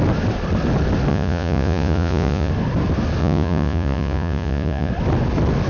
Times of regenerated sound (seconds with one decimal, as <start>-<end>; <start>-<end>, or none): 1.1-2.5; 3.2-4.9